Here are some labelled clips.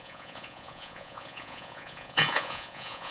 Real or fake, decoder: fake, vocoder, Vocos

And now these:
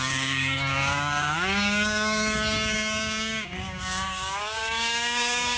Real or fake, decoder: fake, codec, DAC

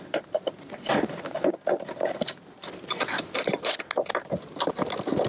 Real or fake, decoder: real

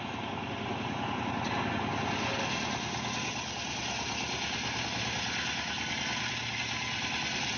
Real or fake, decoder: real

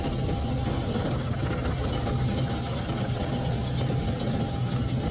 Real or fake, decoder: real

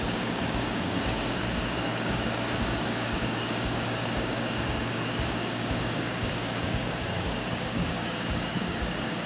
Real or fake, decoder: fake, codec, DAC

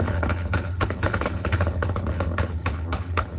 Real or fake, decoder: fake, codec, HILCodec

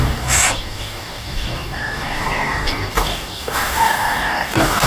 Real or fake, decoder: fake, codec, DAC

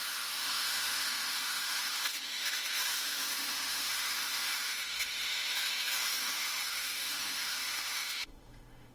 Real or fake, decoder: fake, autoencoder, DAC-VAE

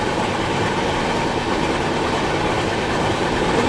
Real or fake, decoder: real